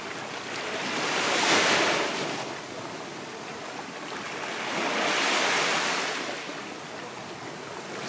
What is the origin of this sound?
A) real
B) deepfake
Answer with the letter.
A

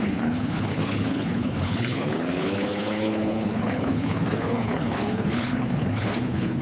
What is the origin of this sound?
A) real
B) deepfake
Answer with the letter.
B